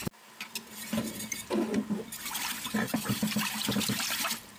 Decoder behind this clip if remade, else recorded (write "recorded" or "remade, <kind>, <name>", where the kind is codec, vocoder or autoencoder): recorded